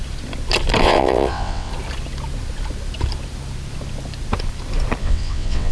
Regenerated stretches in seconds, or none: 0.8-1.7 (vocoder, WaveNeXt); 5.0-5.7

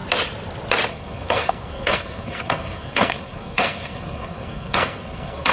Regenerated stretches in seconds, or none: 0.9-5.5 (codec, SNAC)

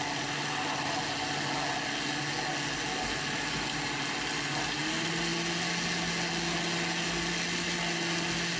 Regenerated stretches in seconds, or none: none

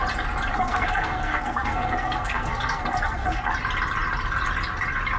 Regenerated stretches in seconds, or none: 0.5-3.4 (codec, SNAC)

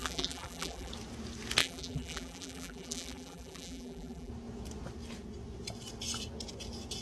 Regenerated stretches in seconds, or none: 0.0-0.9 (vocoder, BigVGAN v2); 1.6-4.3

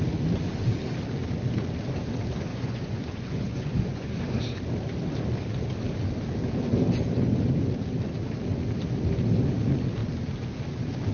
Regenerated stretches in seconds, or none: 2.5-4.2 (vocoder, Vocos)